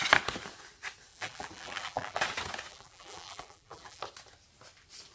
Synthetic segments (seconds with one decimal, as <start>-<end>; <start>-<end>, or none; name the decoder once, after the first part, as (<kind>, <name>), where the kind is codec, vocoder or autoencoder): 1.1-2.2 (vocoder, BigVGAN v2); 2.7-4.0